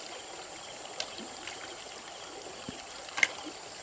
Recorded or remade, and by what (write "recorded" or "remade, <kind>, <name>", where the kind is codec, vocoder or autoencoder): recorded